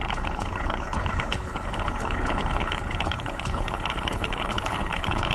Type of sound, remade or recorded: remade